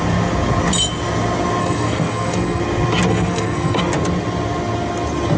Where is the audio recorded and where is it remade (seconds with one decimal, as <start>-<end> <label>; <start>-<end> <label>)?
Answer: 0.0-1.6 recorded; 1.6-2.6 remade; 2.6-3.1 recorded; 3.1-3.8 remade; 3.8-5.4 recorded